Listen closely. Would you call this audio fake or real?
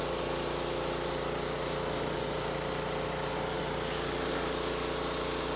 real